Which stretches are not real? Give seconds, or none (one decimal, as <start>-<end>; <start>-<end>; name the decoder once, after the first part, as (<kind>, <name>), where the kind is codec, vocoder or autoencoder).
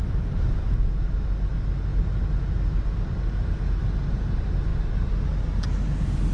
none